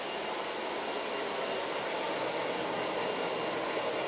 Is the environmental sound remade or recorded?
recorded